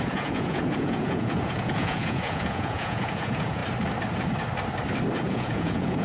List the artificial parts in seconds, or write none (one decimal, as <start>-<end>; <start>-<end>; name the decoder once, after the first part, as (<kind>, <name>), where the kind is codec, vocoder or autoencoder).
0.0-3.6 (vocoder, Vocos); 5.2-6.0